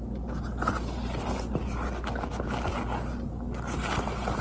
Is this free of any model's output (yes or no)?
yes